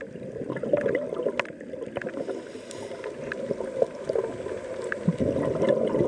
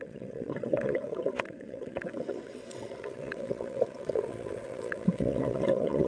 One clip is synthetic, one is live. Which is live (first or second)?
first